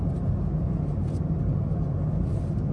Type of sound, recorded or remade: recorded